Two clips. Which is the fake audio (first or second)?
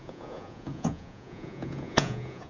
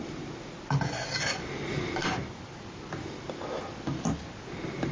first